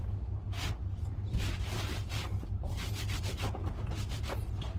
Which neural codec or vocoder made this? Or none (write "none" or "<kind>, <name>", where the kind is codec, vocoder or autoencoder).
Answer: none